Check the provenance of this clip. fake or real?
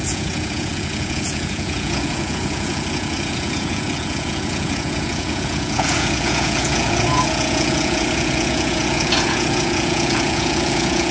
fake